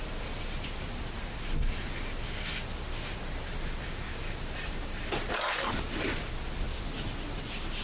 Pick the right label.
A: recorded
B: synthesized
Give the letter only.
A